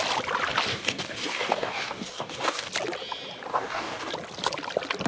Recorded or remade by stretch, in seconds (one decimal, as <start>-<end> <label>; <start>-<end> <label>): 0.0-0.7 recorded; 0.7-2.7 remade; 2.7-3.5 recorded; 3.5-4.1 remade; 4.1-5.1 recorded